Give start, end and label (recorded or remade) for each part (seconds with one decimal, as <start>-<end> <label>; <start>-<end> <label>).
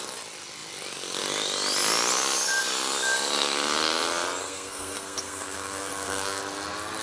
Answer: 0.0-4.4 recorded; 4.4-6.4 remade; 6.4-7.0 recorded